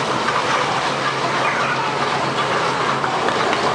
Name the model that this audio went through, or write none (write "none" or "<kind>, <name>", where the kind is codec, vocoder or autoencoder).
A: none